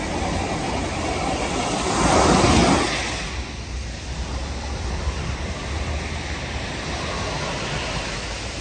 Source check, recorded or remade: recorded